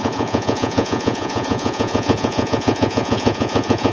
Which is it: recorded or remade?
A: remade